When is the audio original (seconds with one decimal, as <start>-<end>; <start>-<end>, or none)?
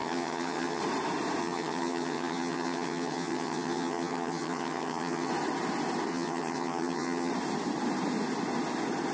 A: 0.8-1.4; 5.3-6.1; 7.3-9.1